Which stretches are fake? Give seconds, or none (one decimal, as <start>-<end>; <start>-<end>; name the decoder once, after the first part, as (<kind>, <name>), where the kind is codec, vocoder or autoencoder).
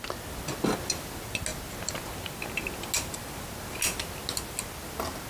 none